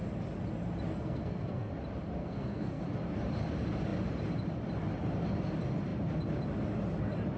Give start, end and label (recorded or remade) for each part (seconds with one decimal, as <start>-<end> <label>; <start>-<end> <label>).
0.0-0.9 recorded; 0.9-1.7 remade; 1.7-2.2 recorded; 2.2-2.8 remade; 2.8-7.4 recorded